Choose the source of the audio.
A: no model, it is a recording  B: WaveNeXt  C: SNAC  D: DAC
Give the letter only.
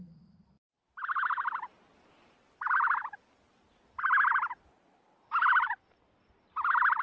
A